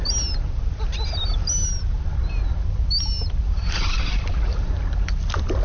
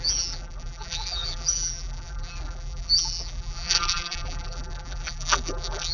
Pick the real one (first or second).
first